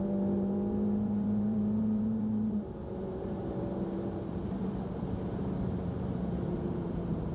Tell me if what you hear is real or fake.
fake